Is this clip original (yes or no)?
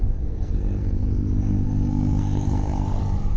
no